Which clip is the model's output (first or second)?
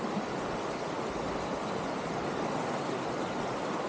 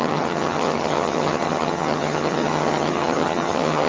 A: second